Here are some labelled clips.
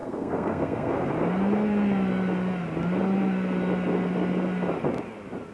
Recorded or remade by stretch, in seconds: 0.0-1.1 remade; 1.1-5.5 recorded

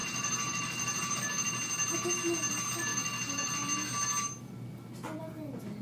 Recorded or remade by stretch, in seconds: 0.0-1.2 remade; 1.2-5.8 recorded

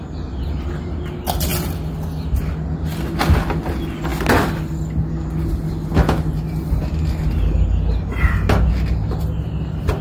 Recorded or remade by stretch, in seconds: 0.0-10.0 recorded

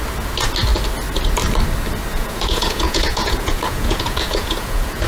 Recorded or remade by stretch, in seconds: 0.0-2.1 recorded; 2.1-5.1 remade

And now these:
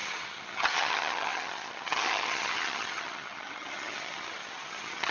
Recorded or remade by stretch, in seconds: 0.0-5.1 remade